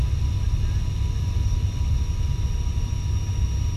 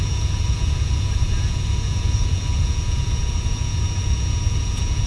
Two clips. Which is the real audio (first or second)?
first